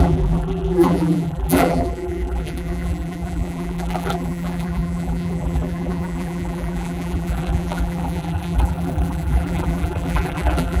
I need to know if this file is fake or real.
fake